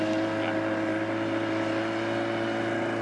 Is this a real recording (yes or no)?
yes